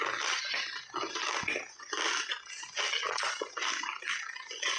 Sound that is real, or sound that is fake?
real